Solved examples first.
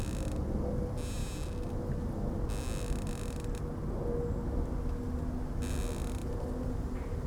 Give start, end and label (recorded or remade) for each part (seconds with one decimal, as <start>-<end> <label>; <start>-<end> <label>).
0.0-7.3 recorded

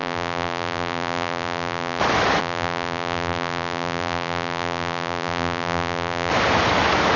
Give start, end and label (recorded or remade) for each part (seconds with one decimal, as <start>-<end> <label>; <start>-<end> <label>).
0.0-2.0 remade; 2.0-2.4 recorded; 2.4-6.3 remade; 6.3-7.2 recorded

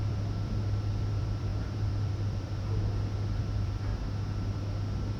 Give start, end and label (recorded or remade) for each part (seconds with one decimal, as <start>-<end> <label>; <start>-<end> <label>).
0.0-3.9 remade; 3.9-5.2 recorded

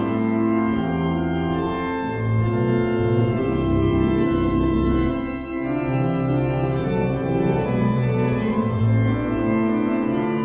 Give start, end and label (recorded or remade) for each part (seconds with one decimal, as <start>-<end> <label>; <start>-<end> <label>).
0.0-3.2 recorded; 3.2-5.1 remade; 5.1-6.8 recorded; 6.8-8.8 remade; 8.8-10.4 recorded

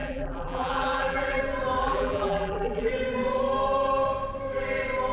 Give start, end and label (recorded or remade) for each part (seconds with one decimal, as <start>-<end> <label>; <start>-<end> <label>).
0.0-1.4 remade; 1.4-1.8 recorded; 1.8-2.9 remade; 2.9-5.1 recorded

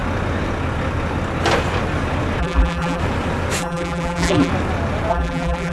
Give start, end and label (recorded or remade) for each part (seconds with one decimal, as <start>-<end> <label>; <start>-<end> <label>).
0.0-2.4 recorded; 2.4-3.0 remade; 3.0-3.6 recorded; 3.6-4.5 remade; 4.5-5.1 recorded; 5.1-5.7 remade

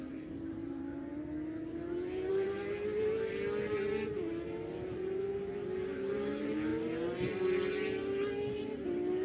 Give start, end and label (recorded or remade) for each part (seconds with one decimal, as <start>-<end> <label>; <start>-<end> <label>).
0.0-1.1 remade; 1.1-2.3 recorded; 2.3-9.2 remade

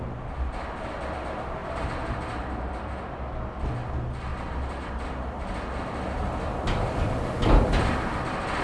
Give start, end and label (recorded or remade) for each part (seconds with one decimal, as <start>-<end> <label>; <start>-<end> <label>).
0.0-1.6 recorded; 1.6-2.7 remade; 2.7-4.3 recorded; 4.3-4.9 remade; 4.9-8.6 recorded